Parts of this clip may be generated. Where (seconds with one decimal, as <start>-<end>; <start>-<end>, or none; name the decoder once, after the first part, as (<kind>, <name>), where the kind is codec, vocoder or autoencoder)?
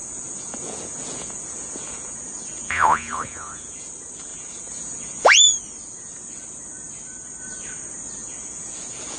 0.0-3.9 (vocoder, Vocos); 4.3-5.6; 8.2-9.2